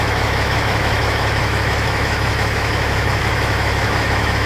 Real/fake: fake